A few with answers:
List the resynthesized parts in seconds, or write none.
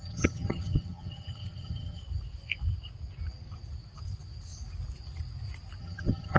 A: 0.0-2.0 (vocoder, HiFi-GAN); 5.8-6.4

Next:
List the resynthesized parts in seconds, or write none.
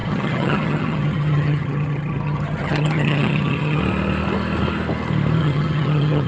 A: 0.0-3.8 (vocoder, HiFi-GAN); 5.4-6.3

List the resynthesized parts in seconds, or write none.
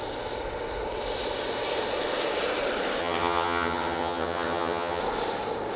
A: 3.0-5.0 (vocoder, HiFi-GAN)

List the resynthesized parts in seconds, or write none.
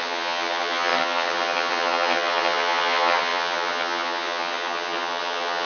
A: 0.0-5.7 (vocoder, HiFi-GAN)